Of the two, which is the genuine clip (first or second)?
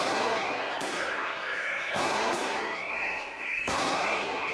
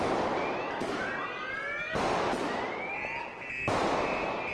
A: second